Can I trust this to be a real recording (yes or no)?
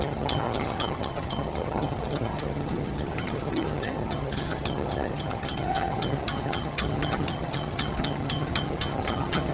no